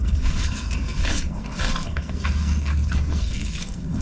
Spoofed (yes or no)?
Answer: yes